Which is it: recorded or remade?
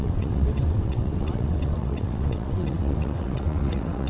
remade